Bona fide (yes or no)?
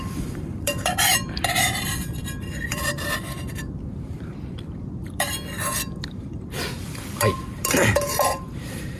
no